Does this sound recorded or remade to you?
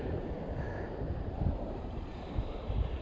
remade